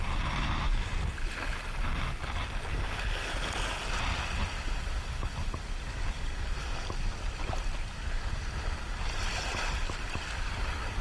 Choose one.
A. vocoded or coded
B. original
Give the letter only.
B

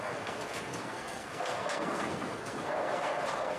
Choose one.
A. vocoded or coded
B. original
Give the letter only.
A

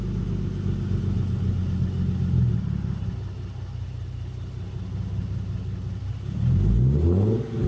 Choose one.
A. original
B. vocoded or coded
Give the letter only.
A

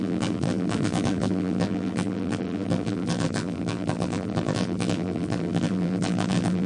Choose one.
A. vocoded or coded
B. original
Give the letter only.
A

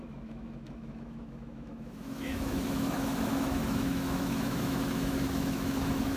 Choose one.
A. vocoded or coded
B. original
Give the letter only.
A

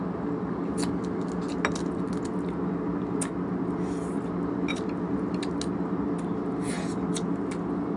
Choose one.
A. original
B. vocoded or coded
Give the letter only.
A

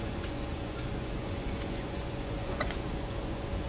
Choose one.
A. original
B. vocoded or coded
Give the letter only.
B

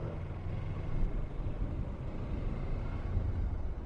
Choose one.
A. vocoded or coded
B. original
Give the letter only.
B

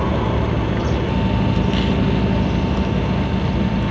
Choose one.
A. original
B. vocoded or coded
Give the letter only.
A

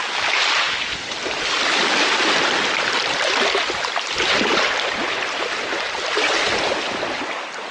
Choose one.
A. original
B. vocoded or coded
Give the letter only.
A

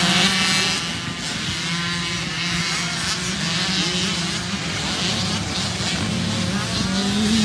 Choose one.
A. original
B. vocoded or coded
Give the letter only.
A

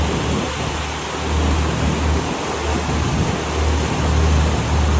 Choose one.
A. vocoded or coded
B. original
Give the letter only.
B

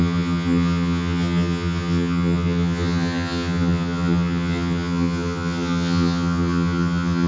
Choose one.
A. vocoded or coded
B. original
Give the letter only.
A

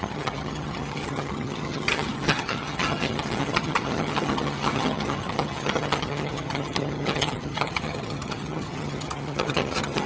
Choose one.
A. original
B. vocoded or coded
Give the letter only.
B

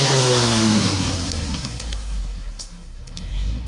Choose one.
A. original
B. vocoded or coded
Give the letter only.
B